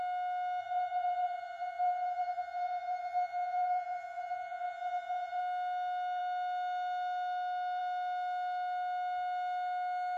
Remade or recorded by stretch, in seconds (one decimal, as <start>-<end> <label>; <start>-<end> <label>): 0.0-0.6 recorded; 0.6-5.4 remade; 5.4-10.2 recorded